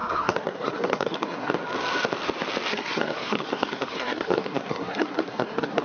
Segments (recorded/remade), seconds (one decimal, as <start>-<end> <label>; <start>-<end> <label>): 0.0-1.5 remade; 1.5-2.7 recorded; 2.7-5.8 remade